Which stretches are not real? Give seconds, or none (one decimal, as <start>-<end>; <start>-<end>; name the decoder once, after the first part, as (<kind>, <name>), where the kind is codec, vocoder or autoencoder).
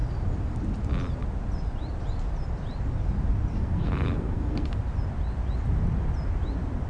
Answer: 3.5-4.8 (codec, SNAC)